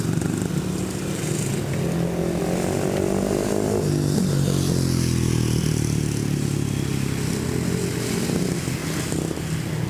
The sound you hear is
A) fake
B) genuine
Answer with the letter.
B